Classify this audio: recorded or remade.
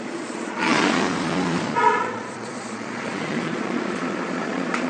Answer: remade